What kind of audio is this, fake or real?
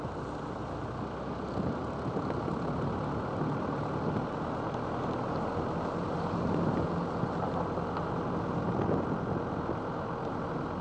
real